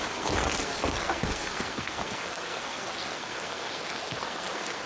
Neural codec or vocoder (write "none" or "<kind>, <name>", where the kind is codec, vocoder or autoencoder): codec, SNAC